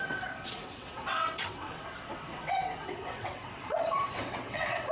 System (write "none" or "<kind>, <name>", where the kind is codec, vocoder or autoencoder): vocoder, WaveNeXt